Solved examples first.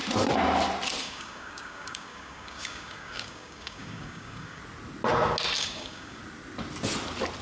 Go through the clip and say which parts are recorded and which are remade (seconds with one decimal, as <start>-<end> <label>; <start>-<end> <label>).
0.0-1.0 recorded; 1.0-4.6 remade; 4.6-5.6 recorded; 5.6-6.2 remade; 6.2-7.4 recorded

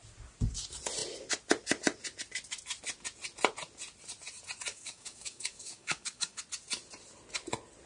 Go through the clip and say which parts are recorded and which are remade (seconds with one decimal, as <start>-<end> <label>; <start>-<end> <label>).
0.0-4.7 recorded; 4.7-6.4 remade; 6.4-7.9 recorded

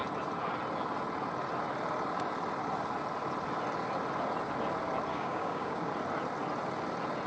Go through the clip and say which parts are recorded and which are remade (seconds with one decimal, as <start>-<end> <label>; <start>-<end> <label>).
0.0-5.1 recorded; 5.1-5.9 remade; 5.9-7.3 recorded